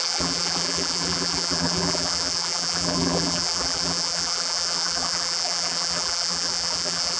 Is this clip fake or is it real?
fake